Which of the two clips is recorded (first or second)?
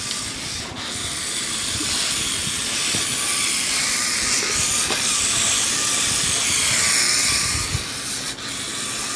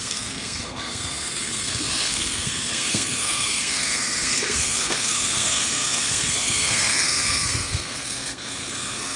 first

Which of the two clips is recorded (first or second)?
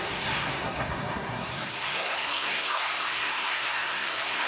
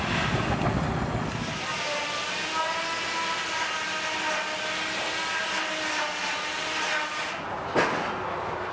second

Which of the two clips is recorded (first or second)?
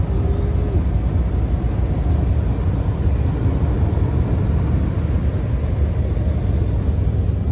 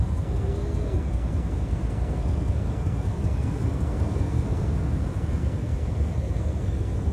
first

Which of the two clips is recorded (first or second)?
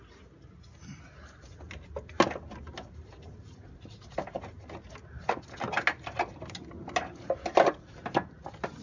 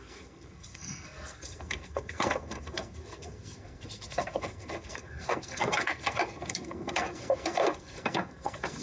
first